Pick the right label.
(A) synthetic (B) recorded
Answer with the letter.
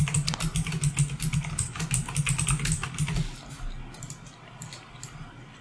B